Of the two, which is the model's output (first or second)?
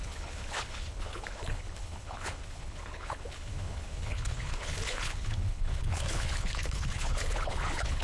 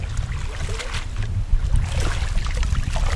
first